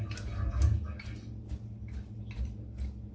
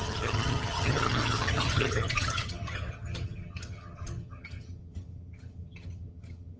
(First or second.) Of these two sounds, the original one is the first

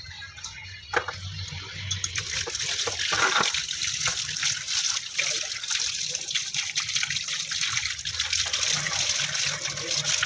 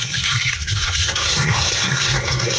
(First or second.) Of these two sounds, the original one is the first